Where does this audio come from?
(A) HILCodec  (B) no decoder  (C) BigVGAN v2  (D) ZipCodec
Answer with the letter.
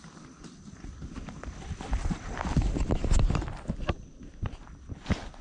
B